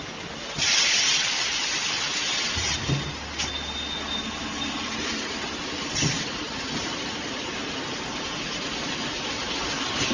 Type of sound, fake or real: real